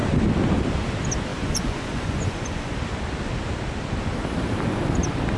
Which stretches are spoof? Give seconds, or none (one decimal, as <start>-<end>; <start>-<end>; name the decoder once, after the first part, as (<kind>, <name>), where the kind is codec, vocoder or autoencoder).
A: 1.3-2.7 (vocoder, Vocos)